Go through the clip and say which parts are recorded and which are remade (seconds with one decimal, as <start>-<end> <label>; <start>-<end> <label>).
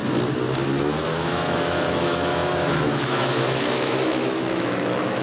0.0-0.9 recorded; 0.9-5.2 remade